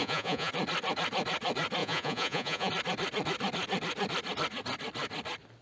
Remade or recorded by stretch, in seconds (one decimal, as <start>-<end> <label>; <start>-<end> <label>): 0.0-0.5 remade; 0.5-1.8 recorded; 1.8-2.7 remade; 2.7-5.6 recorded